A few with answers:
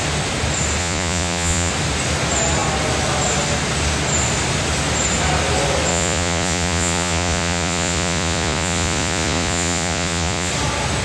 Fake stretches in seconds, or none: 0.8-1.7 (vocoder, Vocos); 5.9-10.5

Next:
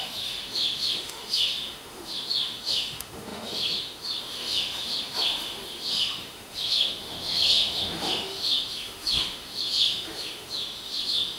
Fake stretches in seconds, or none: 0.0-11.4 (autoencoder, DAC-VAE)

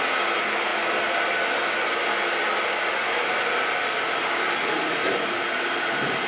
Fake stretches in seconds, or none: none

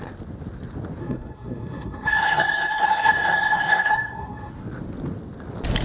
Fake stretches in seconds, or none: 1.0-4.5 (codec, SNAC)

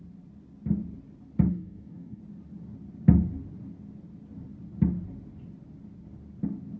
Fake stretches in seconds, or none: 1.5-2.2 (codec, DAC)